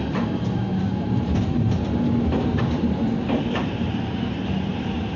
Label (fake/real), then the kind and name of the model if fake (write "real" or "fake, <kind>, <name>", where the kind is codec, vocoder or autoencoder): fake, vocoder, BigVGAN v2